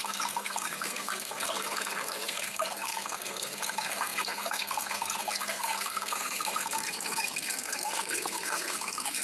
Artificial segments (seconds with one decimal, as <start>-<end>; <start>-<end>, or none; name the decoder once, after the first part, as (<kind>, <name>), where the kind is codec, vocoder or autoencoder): 0.0-9.2 (codec, SNAC)